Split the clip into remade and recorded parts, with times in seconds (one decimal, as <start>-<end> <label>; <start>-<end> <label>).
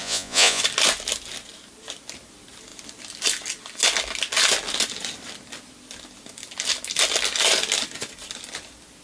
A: 0.0-0.6 remade; 0.6-9.0 recorded